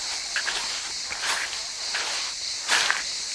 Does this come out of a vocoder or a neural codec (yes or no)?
yes